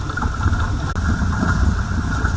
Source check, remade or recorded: recorded